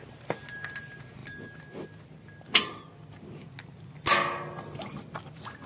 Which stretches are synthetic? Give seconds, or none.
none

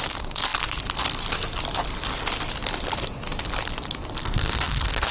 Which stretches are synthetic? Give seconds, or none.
4.2-5.1 (codec, SNAC)

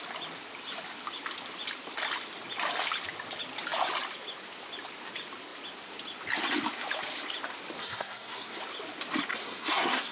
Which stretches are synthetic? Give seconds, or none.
7.8-8.6 (codec, SNAC); 9.3-10.1

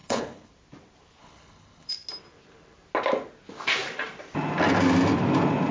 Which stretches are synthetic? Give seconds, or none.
0.0-0.5 (codec, HILCodec); 1.2-1.9

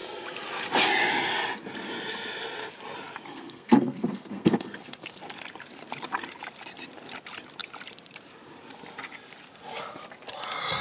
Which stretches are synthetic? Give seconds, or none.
3.3-5.2 (codec, SNAC)

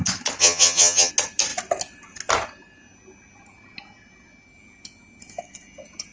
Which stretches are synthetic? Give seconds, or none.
0.4-1.1 (vocoder, HiFi-GAN)

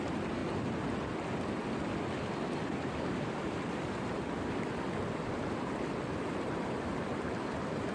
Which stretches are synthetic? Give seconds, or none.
0.0-0.4 (vocoder, BigVGAN v2); 3.7-7.9

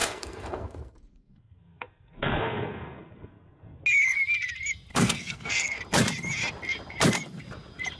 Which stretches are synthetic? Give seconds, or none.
0.0-3.8 (codec, SNAC); 4.9-5.8